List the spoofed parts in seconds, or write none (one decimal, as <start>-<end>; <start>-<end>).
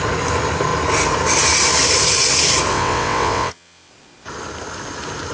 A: 2.7-3.9